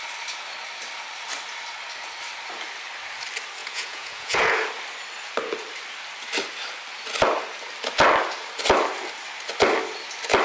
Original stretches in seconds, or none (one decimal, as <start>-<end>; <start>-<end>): 0.0-3.6; 4.5-10.4